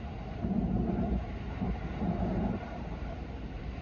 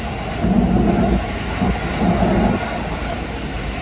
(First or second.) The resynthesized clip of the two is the first